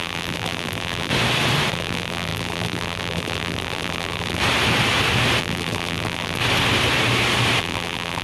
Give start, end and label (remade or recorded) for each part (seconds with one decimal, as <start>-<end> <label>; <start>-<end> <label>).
0.0-1.1 remade; 1.1-1.7 recorded; 1.7-4.4 remade; 4.4-5.4 recorded; 5.4-6.4 remade; 6.4-7.6 recorded; 7.6-8.2 remade